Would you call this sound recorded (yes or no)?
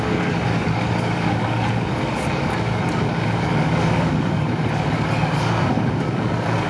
no